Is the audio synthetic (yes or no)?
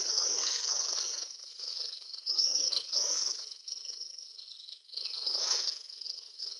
yes